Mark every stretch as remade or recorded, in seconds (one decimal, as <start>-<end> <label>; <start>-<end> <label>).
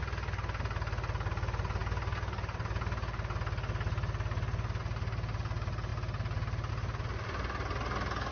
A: 0.0-8.3 recorded